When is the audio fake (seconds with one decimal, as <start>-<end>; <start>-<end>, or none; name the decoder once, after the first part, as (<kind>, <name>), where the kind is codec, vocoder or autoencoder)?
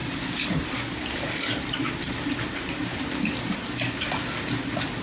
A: 0.0-3.0 (vocoder, BigVGAN v2)